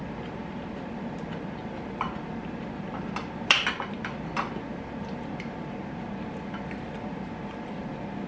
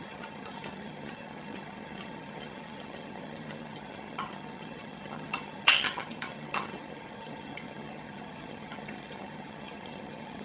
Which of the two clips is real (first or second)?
first